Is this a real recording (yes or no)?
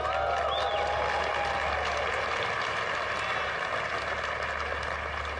yes